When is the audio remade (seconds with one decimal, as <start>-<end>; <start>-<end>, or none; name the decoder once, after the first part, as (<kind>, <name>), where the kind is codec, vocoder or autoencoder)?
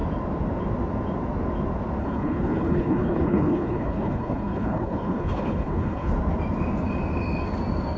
2.0-6.1 (codec, HILCodec)